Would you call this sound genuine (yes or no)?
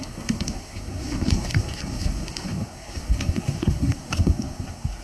no